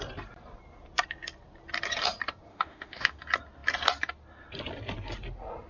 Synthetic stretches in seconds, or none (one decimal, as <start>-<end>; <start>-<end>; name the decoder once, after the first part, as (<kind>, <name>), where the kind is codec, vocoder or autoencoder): 2.5-3.2 (autoencoder, DAC-VAE)